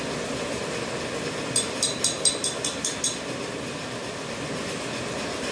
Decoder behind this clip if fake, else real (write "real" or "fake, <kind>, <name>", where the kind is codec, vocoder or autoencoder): real